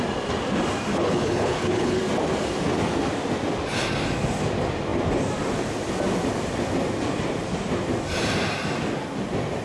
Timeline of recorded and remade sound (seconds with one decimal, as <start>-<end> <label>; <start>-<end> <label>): 0.0-0.9 recorded; 0.9-2.0 remade; 2.0-9.6 recorded